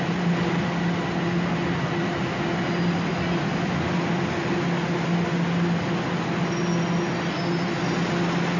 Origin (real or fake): real